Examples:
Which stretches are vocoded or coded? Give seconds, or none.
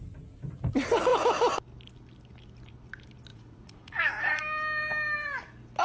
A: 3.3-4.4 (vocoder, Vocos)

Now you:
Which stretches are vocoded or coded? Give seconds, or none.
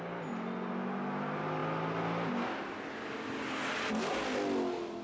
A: none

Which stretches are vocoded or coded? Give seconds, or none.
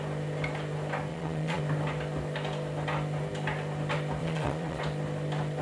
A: 1.1-1.6 (vocoder, Vocos); 4.2-4.8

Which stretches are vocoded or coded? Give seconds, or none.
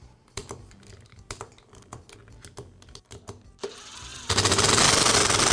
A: none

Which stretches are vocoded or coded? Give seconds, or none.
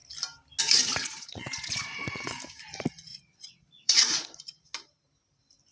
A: 1.0-2.4 (vocoder, Vocos); 3.1-4.6